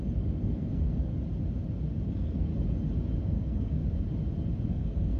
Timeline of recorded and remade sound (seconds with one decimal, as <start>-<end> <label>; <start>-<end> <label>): 0.0-1.1 remade; 1.1-2.1 recorded; 2.1-2.5 remade; 2.5-3.2 recorded; 3.2-3.8 remade; 3.8-4.7 recorded; 4.7-5.2 remade